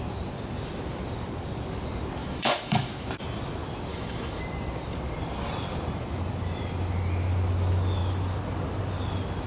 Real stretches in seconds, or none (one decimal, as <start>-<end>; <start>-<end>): 0.0-2.2; 2.9-3.9; 4.4-9.5